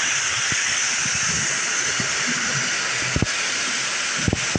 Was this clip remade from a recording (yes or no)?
no